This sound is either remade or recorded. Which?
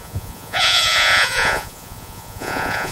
remade